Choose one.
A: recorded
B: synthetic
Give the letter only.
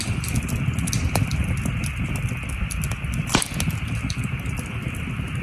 A